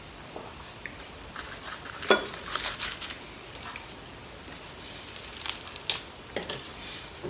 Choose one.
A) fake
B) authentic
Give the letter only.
B